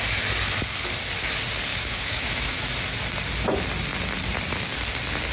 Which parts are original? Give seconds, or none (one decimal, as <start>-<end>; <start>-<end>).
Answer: 0.0-1.7; 2.6-5.3